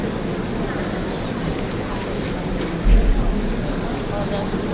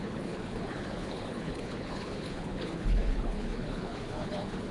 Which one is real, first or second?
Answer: first